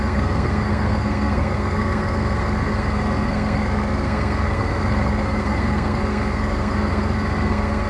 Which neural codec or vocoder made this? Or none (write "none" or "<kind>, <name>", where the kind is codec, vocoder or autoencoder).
codec, SNAC